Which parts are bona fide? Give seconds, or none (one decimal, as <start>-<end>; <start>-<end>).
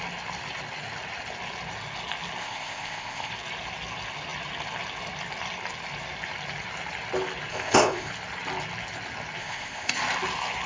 0.0-2.4; 3.3-7.5; 8.1-9.4; 9.9-10.7